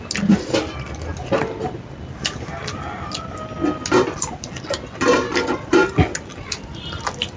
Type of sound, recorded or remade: recorded